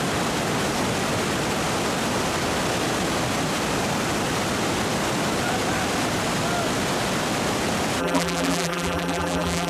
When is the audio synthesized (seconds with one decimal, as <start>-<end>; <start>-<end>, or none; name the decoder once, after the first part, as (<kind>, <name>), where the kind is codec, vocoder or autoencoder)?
8.0-9.7 (vocoder, BigVGAN v2)